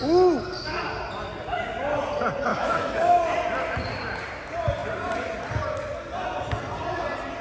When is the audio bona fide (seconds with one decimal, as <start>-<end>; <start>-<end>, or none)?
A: 0.0-2.5; 3.2-7.4